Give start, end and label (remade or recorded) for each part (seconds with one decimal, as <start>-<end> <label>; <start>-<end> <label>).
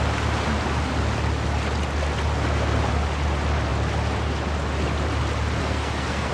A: 0.0-5.6 recorded; 5.6-6.3 remade